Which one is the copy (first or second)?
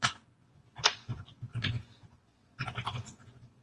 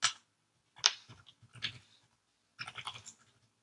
first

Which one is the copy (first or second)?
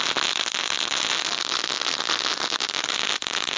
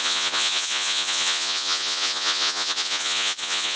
second